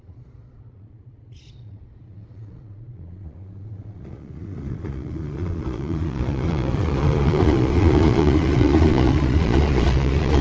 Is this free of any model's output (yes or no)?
no